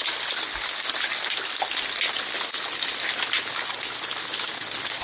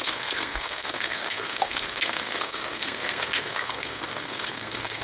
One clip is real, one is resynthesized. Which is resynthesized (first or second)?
second